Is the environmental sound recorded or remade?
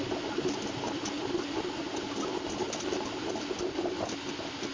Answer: recorded